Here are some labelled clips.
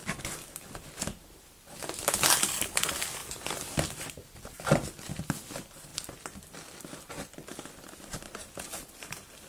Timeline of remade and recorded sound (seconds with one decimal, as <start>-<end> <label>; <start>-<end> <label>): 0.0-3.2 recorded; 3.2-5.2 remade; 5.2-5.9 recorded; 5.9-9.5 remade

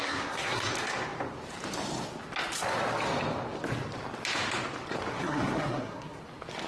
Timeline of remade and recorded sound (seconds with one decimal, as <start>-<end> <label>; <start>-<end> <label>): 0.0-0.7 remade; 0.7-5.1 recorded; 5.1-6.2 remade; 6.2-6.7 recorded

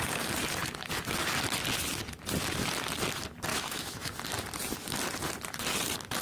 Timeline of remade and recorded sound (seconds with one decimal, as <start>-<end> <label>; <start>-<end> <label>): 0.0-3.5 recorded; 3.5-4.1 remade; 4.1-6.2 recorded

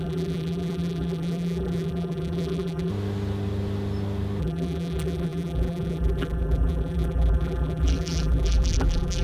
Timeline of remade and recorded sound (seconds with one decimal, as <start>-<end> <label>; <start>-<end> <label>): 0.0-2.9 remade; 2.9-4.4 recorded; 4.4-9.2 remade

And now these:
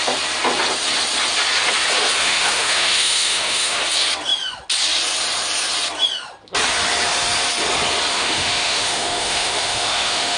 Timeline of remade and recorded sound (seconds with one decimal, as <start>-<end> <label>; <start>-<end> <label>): 0.0-2.2 recorded; 2.2-3.8 remade; 3.8-8.1 recorded; 8.1-10.4 remade

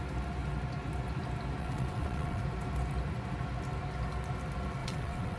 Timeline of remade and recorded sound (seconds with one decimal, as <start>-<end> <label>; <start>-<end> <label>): 0.0-1.6 recorded; 1.6-2.4 remade; 2.4-4.8 recorded; 4.8-5.4 remade

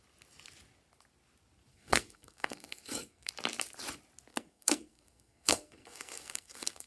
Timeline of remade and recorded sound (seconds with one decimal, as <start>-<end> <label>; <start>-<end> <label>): 0.0-1.7 recorded; 1.7-3.3 remade; 3.3-4.3 recorded; 4.3-6.9 remade